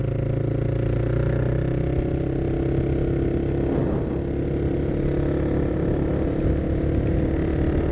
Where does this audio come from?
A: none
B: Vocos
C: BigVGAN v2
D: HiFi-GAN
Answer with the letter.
A